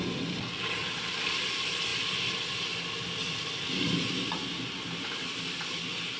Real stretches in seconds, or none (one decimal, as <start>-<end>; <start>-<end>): 0.0-6.2